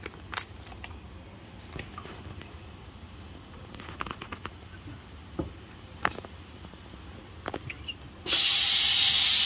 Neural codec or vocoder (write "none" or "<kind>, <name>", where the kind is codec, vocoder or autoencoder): none